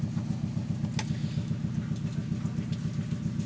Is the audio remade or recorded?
recorded